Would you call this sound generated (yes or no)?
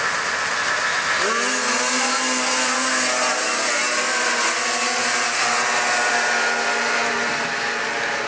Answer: no